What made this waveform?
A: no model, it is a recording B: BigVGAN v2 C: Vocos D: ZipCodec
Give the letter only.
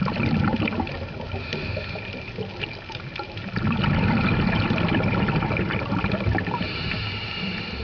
A